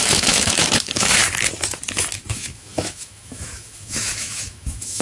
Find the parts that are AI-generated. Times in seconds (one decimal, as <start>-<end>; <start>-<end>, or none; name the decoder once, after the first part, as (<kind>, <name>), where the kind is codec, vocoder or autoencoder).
0.0-1.2 (autoencoder, DAC-VAE); 2.3-5.0

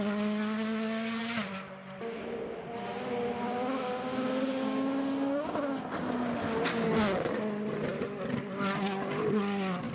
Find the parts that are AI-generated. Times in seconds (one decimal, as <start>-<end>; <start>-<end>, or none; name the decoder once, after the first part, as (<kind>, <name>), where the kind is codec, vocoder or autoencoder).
none

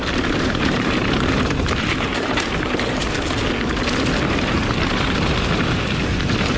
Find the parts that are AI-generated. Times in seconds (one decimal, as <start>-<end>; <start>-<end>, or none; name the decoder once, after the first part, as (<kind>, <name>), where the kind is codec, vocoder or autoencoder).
0.0-3.0 (vocoder, BigVGAN v2); 4.5-6.6

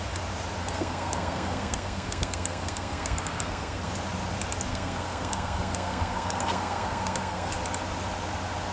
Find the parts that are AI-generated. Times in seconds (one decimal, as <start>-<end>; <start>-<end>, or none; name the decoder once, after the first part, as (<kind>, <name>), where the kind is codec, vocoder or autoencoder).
0.6-3.9 (codec, SNAC); 4.7-7.5

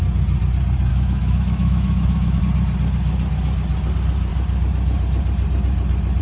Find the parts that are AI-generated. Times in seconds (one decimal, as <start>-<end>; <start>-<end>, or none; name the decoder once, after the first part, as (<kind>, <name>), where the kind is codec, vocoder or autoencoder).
0.9-2.4 (autoencoder, DAC-VAE)

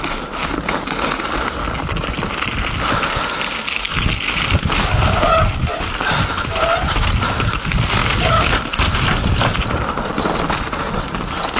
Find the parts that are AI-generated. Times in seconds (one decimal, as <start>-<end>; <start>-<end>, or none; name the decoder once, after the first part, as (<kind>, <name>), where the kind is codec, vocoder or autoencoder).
none

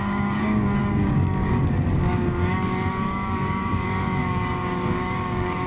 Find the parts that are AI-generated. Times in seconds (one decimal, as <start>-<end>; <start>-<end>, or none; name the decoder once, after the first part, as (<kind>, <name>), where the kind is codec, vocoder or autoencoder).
0.0-5.7 (codec, DAC)

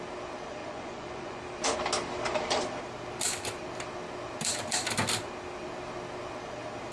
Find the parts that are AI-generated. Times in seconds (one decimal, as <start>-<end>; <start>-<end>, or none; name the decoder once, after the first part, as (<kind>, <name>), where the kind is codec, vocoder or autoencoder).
0.6-1.4 (vocoder, Vocos)